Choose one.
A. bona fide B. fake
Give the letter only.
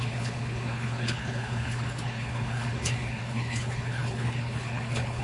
B